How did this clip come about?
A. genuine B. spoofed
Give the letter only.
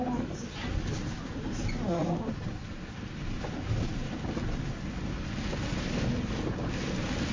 A